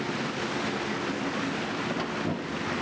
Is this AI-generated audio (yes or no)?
no